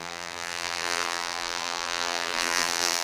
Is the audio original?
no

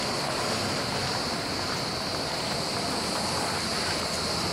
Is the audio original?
no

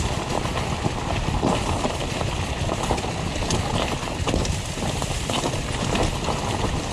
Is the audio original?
yes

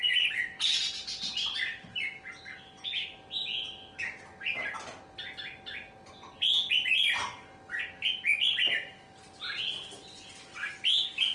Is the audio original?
yes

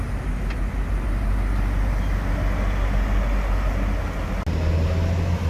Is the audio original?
yes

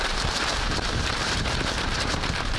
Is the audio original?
no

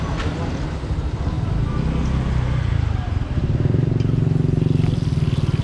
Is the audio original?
yes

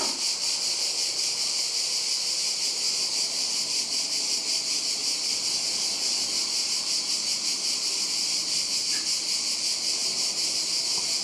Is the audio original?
yes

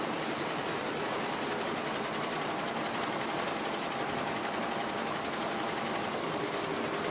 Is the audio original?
yes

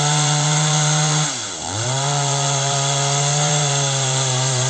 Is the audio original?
no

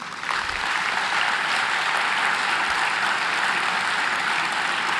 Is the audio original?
yes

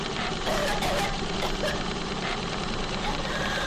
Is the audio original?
no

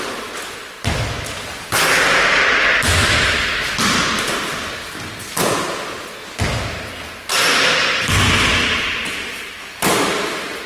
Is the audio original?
yes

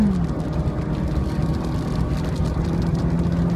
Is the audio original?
yes